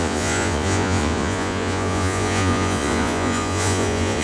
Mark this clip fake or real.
fake